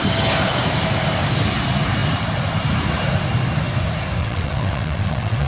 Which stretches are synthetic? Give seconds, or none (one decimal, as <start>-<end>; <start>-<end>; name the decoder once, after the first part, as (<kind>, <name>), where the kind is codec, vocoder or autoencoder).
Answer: 4.2-5.5 (vocoder, WaveNeXt)